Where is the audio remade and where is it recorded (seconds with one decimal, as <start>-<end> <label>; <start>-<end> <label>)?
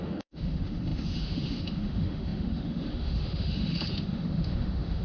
0.0-5.0 remade